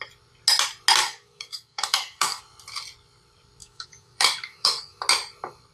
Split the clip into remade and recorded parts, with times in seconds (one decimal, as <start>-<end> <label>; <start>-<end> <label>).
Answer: 0.0-1.0 recorded; 1.0-2.4 remade; 2.4-3.6 recorded; 3.6-5.0 remade; 5.0-5.7 recorded